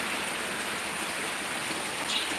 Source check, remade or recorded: recorded